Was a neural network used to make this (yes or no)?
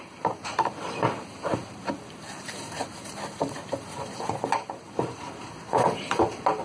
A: yes